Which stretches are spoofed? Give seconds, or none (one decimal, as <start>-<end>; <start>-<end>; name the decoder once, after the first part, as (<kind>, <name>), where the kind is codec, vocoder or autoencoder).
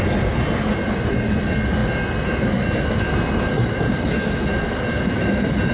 none